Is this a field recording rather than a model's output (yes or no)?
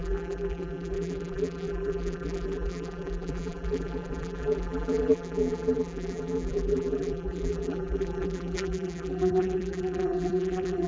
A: no